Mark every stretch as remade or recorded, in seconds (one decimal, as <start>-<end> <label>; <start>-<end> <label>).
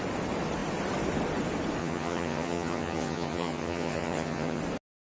0.0-1.8 recorded; 1.8-4.6 remade; 4.6-5.0 recorded